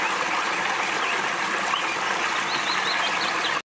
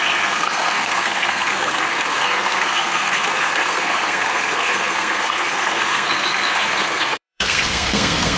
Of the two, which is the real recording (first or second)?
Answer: first